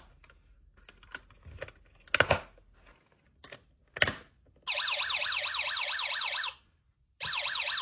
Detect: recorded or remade recorded